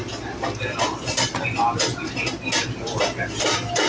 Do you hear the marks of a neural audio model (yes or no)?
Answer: no